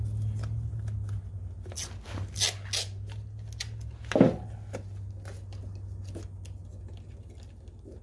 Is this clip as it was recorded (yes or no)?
yes